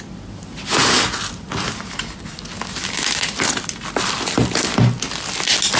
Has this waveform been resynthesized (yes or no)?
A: no